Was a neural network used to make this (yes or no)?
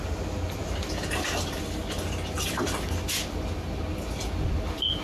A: no